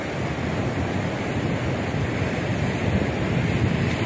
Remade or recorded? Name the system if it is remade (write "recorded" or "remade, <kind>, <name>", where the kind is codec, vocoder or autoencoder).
recorded